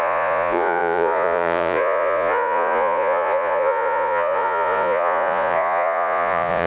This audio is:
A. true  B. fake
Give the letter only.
B